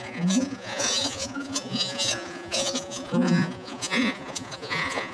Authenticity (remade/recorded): remade